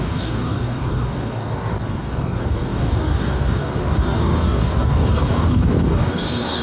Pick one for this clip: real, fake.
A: fake